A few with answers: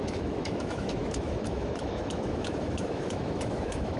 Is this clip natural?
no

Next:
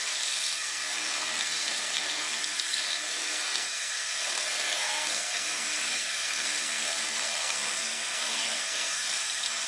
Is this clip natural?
no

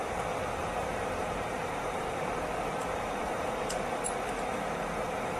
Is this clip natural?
no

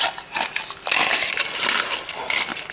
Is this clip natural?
yes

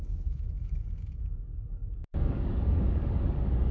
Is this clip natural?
no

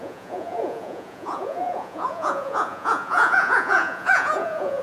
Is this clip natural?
no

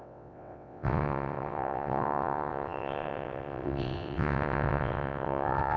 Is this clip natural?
no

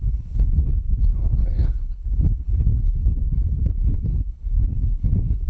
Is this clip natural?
no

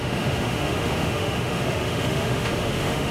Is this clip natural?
no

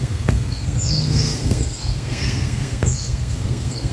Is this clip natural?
no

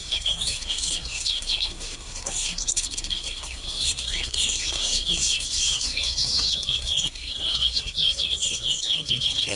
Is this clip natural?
no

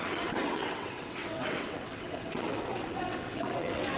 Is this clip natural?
no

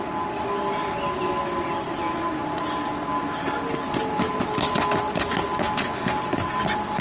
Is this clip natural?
yes